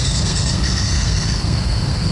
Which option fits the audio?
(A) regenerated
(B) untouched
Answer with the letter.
A